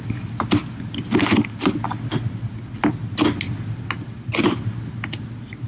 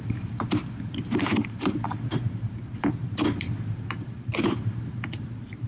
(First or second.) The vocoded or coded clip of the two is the second